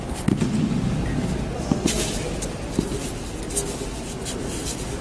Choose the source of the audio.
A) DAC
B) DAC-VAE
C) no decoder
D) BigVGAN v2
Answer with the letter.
D